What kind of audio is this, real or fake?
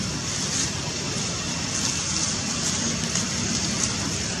real